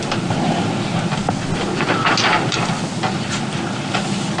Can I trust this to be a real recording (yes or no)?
yes